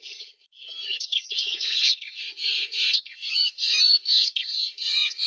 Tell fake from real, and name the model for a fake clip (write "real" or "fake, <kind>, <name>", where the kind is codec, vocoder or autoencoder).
fake, codec, SNAC